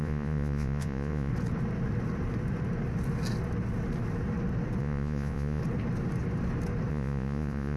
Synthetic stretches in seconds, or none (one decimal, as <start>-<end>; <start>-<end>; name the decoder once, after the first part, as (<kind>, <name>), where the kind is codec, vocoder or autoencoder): 0.0-1.3 (vocoder, Vocos); 4.8-5.6; 6.9-7.8